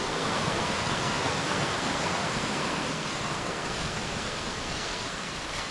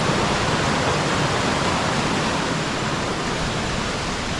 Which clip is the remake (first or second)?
first